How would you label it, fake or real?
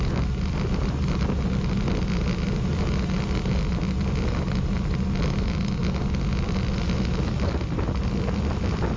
real